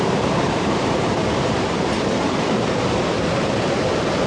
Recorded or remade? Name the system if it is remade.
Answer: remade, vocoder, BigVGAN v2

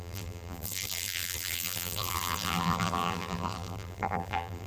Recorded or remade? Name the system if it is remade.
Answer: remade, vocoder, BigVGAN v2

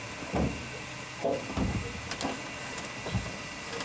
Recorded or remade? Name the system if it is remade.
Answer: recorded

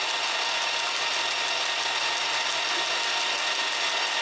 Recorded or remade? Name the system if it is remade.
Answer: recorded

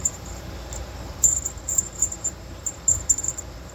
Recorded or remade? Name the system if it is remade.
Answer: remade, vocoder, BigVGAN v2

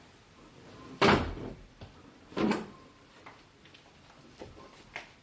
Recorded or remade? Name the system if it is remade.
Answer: remade, vocoder, BigVGAN v2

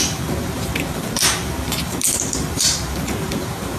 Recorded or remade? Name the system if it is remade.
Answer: remade, vocoder, BigVGAN v2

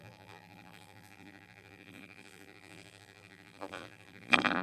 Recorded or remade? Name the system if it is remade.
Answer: remade, vocoder, BigVGAN v2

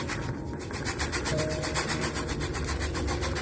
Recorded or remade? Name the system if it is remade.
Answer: remade, vocoder, BigVGAN v2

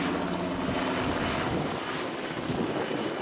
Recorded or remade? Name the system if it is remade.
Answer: recorded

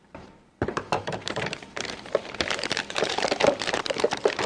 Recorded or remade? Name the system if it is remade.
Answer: remade, vocoder, BigVGAN v2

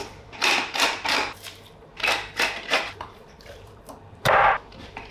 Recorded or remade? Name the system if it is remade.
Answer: remade, vocoder, BigVGAN v2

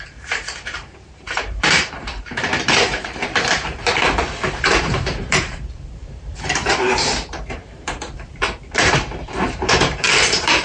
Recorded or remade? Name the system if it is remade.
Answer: remade, vocoder, BigVGAN v2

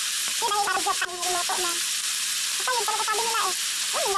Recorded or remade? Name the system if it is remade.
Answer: remade, vocoder, BigVGAN v2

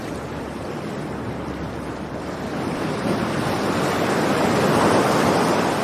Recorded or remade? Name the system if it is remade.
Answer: remade, vocoder, BigVGAN v2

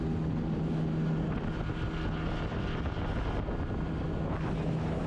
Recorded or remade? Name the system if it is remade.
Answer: recorded